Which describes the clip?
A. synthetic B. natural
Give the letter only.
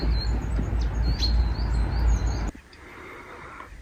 B